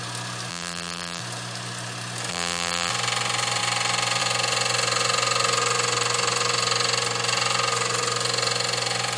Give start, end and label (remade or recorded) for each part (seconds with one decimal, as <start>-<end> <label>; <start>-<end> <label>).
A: 0.0-0.5 recorded; 0.5-1.2 remade; 1.2-2.3 recorded; 2.3-2.9 remade; 2.9-9.2 recorded